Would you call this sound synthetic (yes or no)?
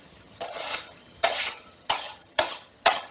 yes